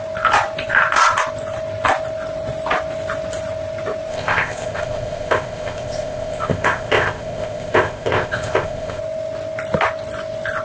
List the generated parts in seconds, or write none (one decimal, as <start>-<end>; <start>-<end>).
4.1-9.0